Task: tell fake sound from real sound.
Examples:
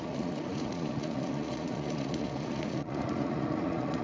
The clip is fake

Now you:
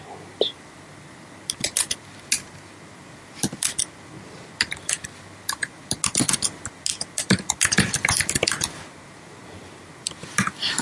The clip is real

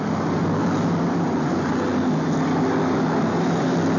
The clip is real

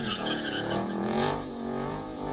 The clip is fake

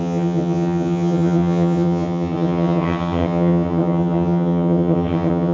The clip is fake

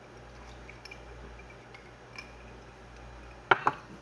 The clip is real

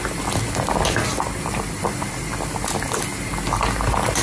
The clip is real